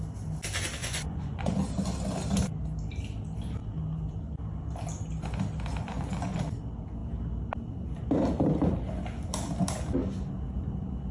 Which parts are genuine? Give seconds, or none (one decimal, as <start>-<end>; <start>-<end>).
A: 0.0-0.8; 1.5-5.8; 6.4-11.1